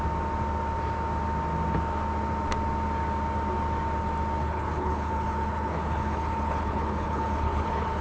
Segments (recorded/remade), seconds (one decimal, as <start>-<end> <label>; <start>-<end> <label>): 0.0-4.4 recorded; 4.4-8.0 remade